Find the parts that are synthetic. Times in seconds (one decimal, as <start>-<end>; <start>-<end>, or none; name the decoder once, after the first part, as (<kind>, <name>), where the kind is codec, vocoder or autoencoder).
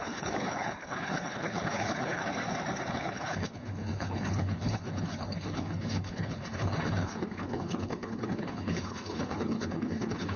0.0-2.2 (codec, HILCodec); 2.9-10.4